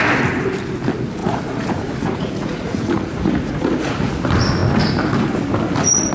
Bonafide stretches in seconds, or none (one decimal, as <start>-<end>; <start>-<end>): 0.0-1.2; 4.1-6.1

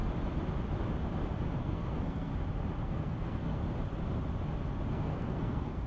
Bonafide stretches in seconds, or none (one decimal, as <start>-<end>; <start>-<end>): 0.0-1.6; 2.3-2.8; 3.6-4.9

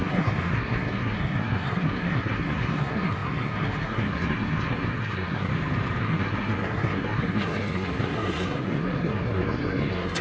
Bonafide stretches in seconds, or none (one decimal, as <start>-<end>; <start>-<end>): 5.5-6.0

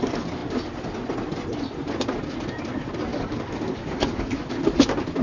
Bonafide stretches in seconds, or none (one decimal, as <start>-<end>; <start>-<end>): 0.0-3.1; 4.5-5.2

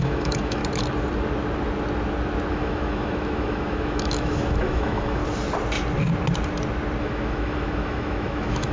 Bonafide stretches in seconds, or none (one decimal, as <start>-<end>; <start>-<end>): 0.6-2.5; 5.2-7.0

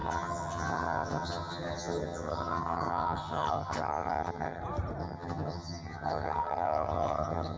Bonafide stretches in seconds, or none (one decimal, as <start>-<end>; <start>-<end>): 4.6-5.0

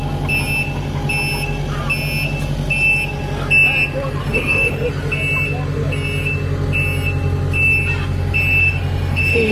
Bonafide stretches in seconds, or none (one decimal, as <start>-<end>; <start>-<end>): 0.0-4.2; 4.9-8.6